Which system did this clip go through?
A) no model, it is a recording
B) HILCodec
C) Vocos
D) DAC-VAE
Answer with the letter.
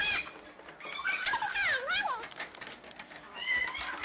A